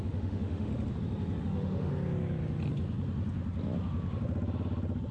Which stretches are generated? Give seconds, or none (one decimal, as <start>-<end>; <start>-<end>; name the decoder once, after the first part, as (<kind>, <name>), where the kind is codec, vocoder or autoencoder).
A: 0.0-0.7 (autoencoder, DAC-VAE); 1.4-1.9